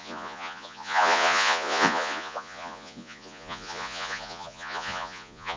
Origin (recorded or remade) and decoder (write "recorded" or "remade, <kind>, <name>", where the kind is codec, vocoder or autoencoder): remade, vocoder, Vocos